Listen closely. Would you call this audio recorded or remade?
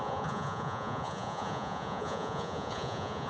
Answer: remade